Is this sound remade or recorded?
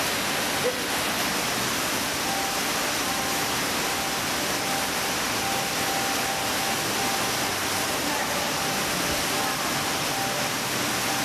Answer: recorded